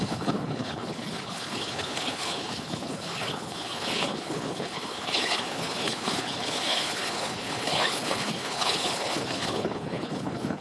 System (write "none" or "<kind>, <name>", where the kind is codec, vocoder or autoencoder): codec, HILCodec